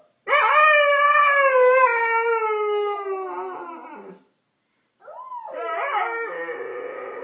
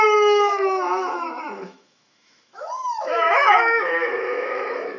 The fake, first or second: second